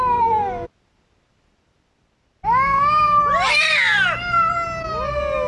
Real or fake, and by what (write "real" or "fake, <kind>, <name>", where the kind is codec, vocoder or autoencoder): real